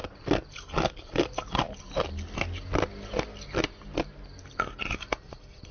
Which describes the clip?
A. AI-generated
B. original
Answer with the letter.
B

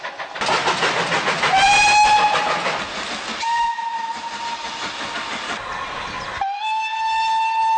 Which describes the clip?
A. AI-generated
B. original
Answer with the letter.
B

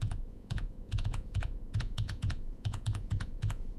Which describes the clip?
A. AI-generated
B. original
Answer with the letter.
A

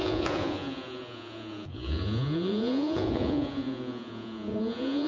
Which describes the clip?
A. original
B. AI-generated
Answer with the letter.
B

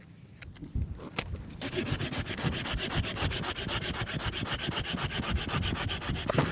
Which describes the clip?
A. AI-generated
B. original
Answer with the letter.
B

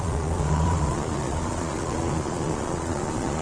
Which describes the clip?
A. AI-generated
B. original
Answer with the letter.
A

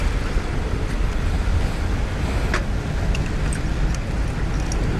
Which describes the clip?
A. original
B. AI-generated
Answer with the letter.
A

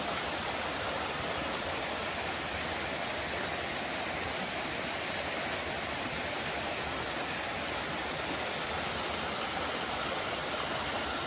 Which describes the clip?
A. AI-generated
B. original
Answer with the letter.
B